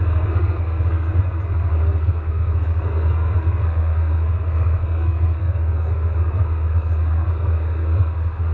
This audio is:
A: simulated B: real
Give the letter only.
A